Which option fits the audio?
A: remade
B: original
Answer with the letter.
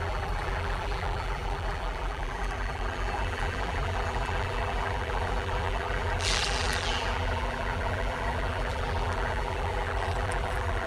A